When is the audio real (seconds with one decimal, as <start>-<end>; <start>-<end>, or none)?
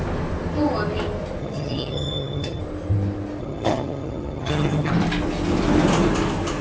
0.0-1.4; 2.6-3.4; 4.9-6.6